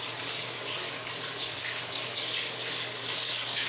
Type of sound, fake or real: fake